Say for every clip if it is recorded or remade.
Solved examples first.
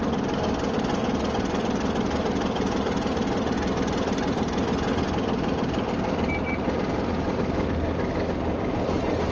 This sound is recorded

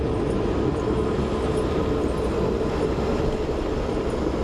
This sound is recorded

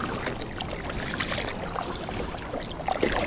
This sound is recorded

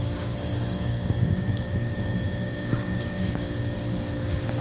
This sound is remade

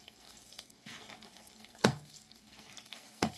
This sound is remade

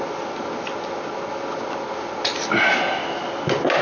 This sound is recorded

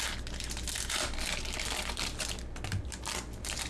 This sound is recorded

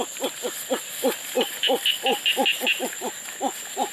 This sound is recorded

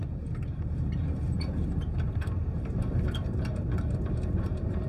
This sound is remade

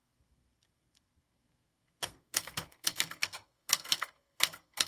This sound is remade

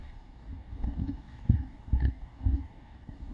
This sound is remade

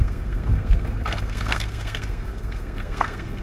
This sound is remade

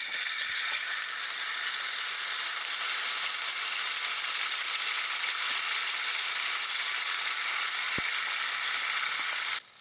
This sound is recorded